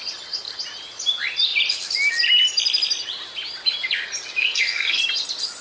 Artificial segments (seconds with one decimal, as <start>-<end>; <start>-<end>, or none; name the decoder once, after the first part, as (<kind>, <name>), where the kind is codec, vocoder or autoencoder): 4.4-5.0 (codec, SNAC)